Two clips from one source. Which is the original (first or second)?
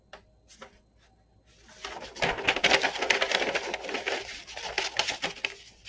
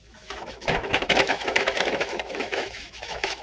first